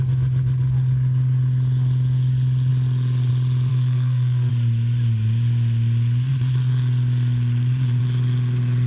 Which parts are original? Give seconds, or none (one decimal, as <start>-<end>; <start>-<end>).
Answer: 0.0-3.7; 4.5-8.9